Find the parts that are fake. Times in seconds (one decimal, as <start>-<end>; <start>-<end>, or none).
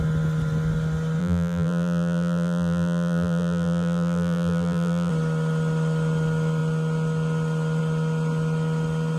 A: 1.2-5.1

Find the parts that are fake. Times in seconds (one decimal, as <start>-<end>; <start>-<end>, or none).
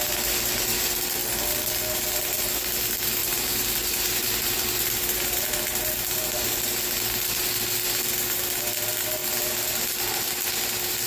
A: 3.2-5.6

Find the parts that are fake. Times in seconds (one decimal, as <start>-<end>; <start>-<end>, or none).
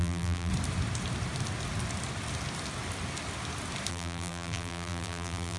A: 0.0-0.5; 3.9-5.6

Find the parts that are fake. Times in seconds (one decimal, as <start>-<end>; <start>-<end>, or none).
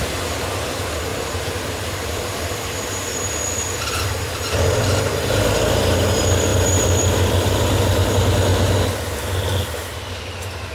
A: 1.1-2.9; 6.5-8.1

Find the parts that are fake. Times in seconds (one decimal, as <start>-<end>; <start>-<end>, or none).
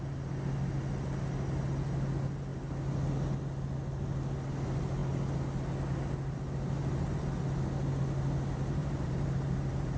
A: 8.8-10.0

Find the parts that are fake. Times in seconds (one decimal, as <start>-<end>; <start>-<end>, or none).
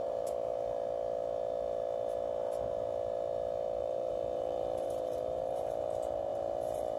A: 0.0-0.5; 3.8-7.0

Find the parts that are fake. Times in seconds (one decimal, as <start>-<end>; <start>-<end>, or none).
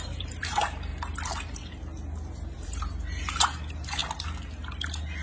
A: 0.0-0.9; 2.3-4.0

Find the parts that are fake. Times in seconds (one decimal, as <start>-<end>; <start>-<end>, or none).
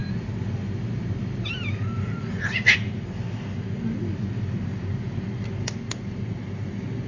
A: none